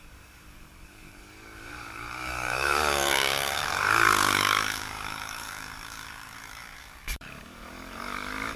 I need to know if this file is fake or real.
fake